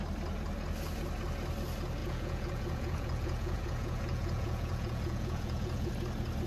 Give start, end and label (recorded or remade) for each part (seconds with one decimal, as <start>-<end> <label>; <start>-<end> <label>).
0.0-2.0 recorded; 2.0-5.9 remade; 5.9-6.5 recorded